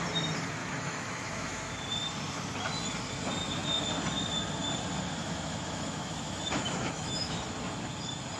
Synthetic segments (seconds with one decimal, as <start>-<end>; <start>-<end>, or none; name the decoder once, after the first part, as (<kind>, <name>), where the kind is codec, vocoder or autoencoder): 0.6-1.8 (autoencoder, DAC-VAE); 5.2-7.4

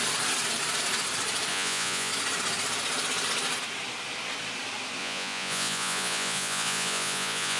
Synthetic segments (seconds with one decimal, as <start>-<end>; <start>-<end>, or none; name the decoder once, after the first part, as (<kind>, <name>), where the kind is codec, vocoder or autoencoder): 1.5-2.1 (vocoder, Vocos); 5.0-7.6

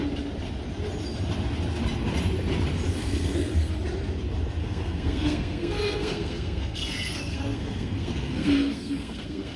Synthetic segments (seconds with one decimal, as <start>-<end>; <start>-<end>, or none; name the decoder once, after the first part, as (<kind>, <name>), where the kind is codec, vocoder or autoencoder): 3.0-3.7 (codec, SNAC); 4.6-9.6

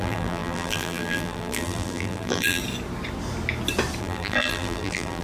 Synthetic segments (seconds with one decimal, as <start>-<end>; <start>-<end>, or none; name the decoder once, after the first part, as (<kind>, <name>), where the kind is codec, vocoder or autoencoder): 0.0-2.6 (vocoder, BigVGAN v2); 4.0-5.2

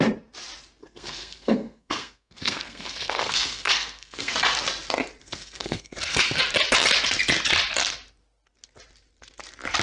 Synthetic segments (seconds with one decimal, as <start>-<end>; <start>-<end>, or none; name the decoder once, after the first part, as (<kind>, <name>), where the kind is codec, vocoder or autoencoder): 0.8-4.3 (codec, SNAC); 5.2-6.4